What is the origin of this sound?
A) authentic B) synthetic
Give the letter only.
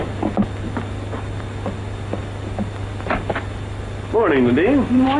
A